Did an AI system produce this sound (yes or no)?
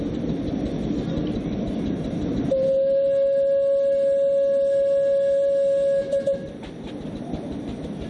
no